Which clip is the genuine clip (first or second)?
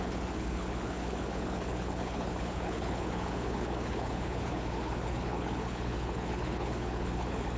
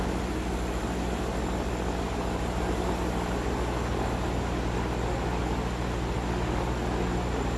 second